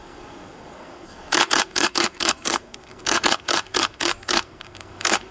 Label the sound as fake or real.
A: fake